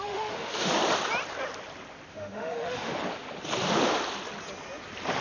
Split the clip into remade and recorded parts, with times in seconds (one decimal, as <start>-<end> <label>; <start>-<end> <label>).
0.0-0.7 remade; 0.7-2.1 recorded; 2.1-2.9 remade; 2.9-5.2 recorded